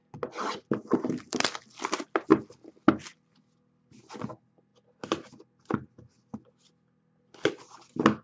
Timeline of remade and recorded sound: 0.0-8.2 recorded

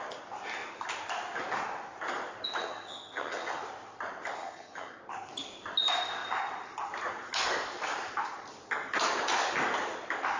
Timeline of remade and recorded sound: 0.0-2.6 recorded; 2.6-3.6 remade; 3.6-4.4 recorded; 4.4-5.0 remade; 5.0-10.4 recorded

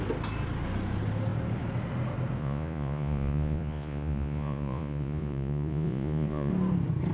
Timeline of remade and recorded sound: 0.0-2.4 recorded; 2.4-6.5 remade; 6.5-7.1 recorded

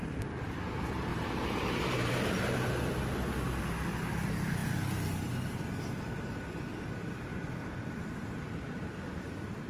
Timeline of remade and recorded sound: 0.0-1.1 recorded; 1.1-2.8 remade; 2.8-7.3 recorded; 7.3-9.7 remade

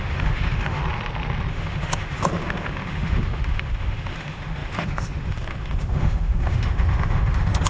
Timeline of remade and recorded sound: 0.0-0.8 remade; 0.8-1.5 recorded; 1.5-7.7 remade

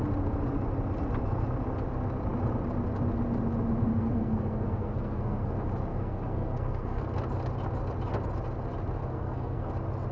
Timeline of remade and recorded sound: 0.0-3.9 recorded; 3.9-5.5 remade; 5.5-5.9 recorded; 5.9-7.0 remade; 7.0-9.0 recorded; 9.0-9.7 remade; 9.7-10.1 recorded